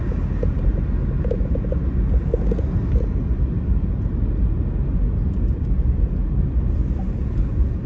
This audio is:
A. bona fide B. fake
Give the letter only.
A